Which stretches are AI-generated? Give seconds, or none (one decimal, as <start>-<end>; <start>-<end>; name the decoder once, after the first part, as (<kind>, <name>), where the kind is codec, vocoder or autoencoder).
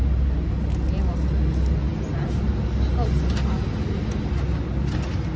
none